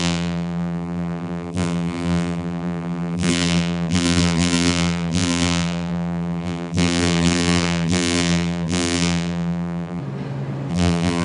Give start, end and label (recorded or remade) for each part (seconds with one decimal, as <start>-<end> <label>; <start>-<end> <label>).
0.0-10.0 remade; 10.0-10.7 recorded; 10.7-11.2 remade

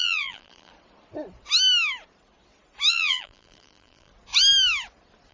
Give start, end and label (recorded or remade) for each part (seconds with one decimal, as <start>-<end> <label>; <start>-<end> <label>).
0.0-0.7 remade; 0.7-2.9 recorded; 2.9-4.1 remade; 4.1-5.3 recorded

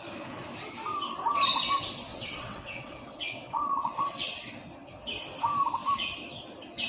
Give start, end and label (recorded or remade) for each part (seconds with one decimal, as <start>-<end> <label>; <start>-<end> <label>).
0.0-2.1 recorded; 2.1-4.5 remade; 4.5-6.9 recorded

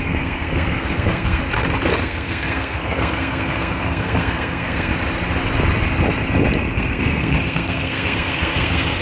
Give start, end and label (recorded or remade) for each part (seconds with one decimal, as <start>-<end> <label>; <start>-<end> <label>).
0.0-1.4 remade; 1.4-2.0 recorded; 2.0-4.9 remade; 4.9-6.7 recorded; 6.7-9.0 remade

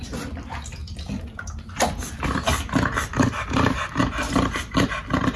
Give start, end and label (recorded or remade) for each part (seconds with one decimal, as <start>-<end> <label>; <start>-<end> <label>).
0.0-5.4 recorded

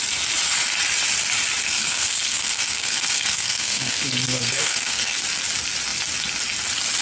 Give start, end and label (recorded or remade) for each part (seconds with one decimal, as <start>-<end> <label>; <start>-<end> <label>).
0.0-1.6 recorded; 1.6-5.2 remade; 5.2-7.0 recorded